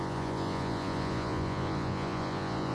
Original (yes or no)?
no